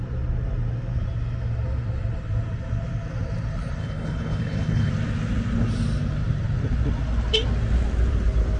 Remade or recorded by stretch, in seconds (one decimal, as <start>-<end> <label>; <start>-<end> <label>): 0.0-3.8 recorded; 3.8-4.9 remade; 4.9-8.6 recorded